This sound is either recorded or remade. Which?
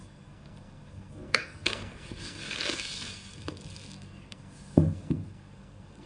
remade